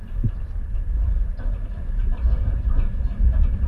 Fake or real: fake